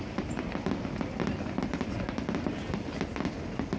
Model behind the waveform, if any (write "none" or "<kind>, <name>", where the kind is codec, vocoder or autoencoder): none